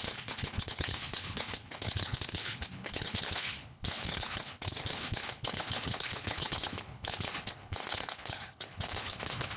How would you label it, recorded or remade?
remade